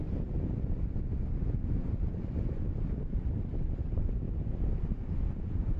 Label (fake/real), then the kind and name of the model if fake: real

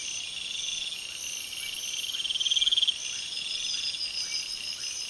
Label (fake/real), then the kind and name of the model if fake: real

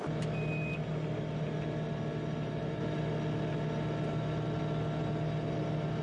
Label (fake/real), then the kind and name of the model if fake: real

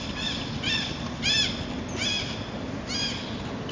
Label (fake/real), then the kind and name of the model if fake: real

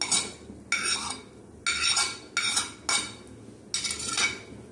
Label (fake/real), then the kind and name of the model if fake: real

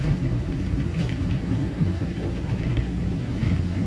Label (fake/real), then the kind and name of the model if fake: fake, codec, SNAC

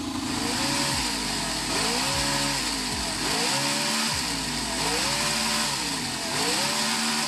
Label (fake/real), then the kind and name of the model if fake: real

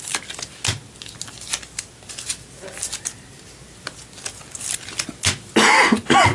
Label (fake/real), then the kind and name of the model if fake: real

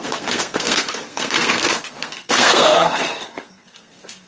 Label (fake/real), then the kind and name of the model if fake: fake, codec, SNAC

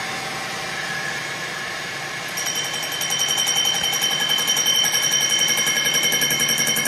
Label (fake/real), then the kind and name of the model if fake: real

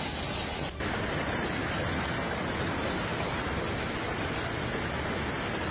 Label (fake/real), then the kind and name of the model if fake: real